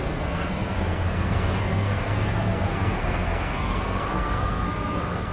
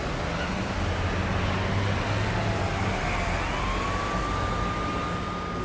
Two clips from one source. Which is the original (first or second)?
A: second